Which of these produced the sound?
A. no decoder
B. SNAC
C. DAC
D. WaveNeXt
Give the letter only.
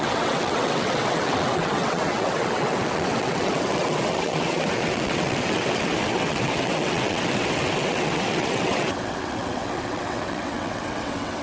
D